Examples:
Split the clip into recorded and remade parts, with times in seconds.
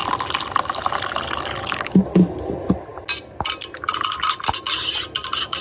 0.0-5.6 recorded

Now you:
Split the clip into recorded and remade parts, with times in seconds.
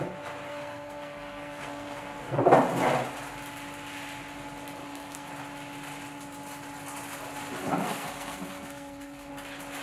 0.0-0.5 recorded; 0.5-2.4 remade; 2.4-4.8 recorded; 4.8-5.3 remade; 5.3-7.6 recorded; 7.6-9.3 remade; 9.3-9.8 recorded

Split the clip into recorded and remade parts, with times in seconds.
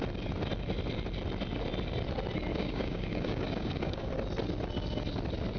0.0-2.5 recorded; 2.5-4.1 remade; 4.1-5.6 recorded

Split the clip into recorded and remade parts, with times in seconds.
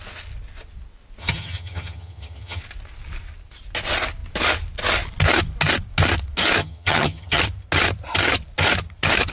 0.0-1.2 recorded; 1.2-2.6 remade; 2.6-6.6 recorded; 6.6-7.4 remade; 7.4-9.3 recorded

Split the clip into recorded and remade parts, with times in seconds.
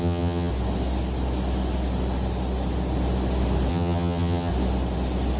0.0-0.5 remade; 0.5-3.7 recorded; 3.7-4.5 remade; 4.5-5.4 recorded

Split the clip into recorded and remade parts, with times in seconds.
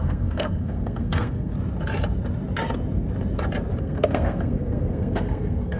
0.0-1.5 remade; 1.5-3.8 recorded; 3.8-5.8 remade